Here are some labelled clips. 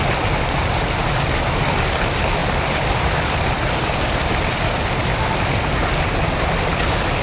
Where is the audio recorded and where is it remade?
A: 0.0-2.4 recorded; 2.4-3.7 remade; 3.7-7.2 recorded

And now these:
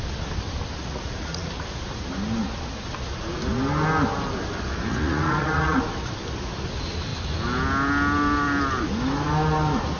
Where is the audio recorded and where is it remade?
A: 0.0-0.8 recorded; 0.8-1.5 remade; 1.5-4.9 recorded; 4.9-5.8 remade; 5.8-10.0 recorded

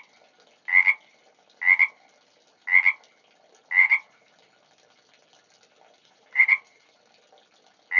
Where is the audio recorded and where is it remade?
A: 0.0-3.8 recorded; 3.8-4.3 remade; 4.3-6.0 recorded; 6.0-7.0 remade; 7.0-8.0 recorded

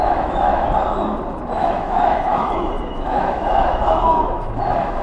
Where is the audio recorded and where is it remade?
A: 0.0-0.5 remade; 0.5-1.6 recorded; 1.6-5.0 remade

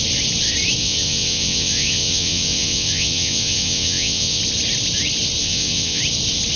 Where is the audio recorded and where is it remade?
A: 0.0-0.8 recorded; 0.8-4.4 remade; 4.4-5.4 recorded; 5.4-6.0 remade; 6.0-6.6 recorded